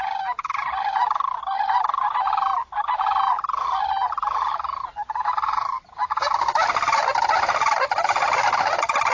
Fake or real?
real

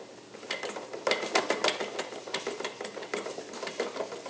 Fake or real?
real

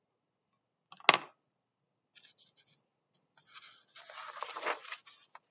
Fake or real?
real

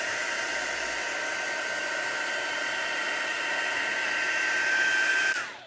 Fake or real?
real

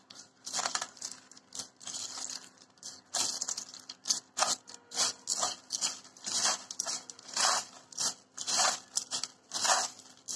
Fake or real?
real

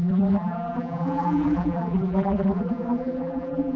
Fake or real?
fake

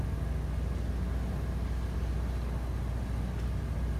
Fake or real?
real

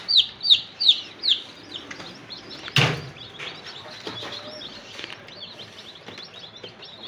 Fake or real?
real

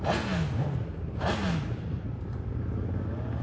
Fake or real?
real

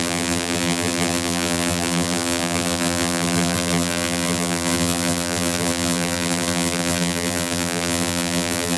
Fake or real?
fake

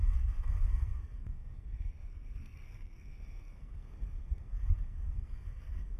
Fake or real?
fake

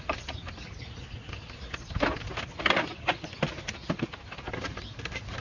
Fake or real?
real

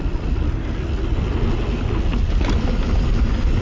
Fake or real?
real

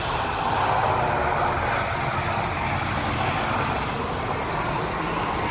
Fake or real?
real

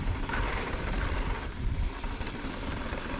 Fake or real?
real